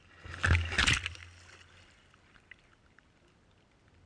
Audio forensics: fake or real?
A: real